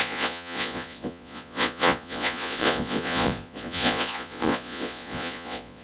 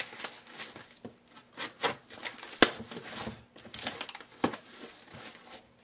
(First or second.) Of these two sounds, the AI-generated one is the first